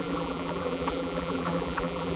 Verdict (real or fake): fake